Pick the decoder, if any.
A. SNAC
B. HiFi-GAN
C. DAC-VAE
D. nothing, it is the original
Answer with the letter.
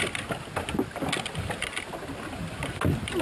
D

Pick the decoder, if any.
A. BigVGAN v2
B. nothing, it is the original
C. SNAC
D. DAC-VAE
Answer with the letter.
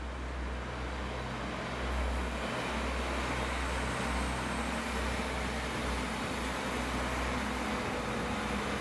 B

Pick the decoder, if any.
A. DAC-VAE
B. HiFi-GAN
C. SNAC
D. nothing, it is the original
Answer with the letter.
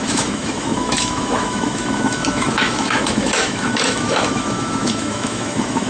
A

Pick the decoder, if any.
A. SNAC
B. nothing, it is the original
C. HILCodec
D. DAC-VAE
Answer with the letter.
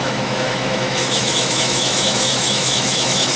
D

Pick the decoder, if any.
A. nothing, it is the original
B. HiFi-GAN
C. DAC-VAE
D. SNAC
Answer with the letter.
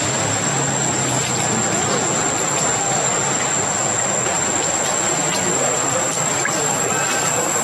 A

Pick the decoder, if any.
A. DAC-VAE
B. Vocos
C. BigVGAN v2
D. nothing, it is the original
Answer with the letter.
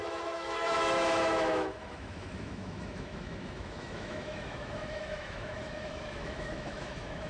A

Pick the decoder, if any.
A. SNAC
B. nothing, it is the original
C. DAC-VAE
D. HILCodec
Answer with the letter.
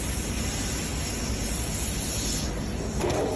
B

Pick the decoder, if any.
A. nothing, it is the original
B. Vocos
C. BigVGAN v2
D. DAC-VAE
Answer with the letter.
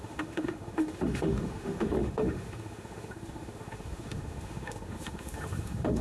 D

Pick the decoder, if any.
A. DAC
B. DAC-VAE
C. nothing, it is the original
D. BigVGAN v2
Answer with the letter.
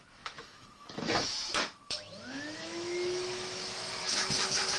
B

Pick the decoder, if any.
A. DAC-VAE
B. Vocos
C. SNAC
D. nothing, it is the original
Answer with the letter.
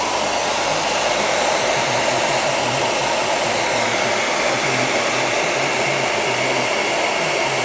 D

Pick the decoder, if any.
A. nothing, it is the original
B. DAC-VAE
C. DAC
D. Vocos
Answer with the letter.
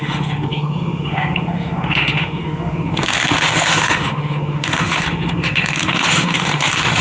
B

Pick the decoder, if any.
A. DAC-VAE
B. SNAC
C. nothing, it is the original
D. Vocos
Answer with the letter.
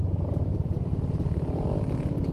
C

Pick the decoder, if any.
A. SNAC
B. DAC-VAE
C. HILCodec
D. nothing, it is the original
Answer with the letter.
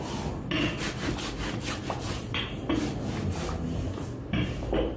D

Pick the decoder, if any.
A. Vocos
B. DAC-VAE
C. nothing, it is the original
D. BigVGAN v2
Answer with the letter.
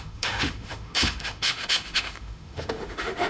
B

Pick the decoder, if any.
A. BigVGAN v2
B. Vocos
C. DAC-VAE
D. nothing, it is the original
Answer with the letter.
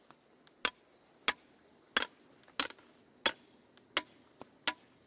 D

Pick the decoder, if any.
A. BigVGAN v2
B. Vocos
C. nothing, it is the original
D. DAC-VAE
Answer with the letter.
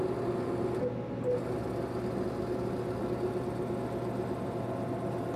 C